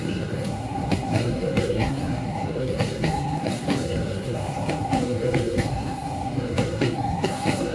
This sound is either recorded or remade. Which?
remade